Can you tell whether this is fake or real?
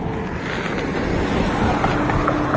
real